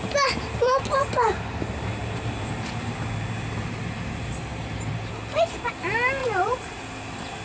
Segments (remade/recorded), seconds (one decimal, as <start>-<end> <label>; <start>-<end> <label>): 0.0-4.5 recorded; 4.5-5.1 remade; 5.1-6.2 recorded; 6.2-6.8 remade; 6.8-7.4 recorded